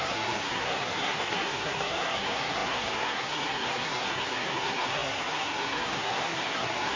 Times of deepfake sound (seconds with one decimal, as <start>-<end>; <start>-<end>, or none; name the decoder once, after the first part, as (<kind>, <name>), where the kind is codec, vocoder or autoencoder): 0.0-7.0 (codec, SNAC)